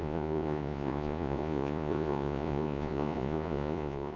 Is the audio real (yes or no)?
no